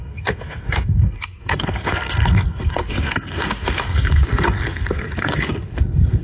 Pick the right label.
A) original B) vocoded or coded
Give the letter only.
B